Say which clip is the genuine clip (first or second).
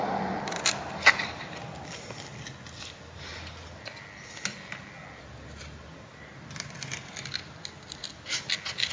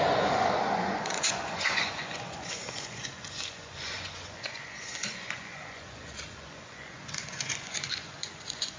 first